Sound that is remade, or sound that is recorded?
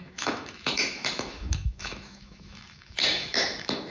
remade